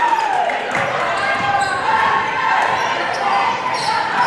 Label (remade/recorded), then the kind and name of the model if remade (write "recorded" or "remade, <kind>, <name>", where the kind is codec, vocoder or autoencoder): remade, vocoder, BigVGAN v2